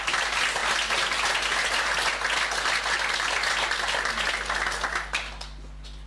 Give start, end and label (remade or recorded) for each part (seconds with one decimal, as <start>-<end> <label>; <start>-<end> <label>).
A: 0.0-6.1 recorded